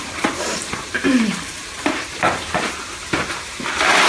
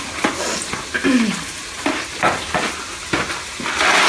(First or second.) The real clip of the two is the second